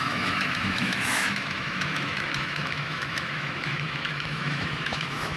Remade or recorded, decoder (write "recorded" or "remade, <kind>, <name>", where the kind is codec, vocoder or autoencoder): remade, autoencoder, DAC-VAE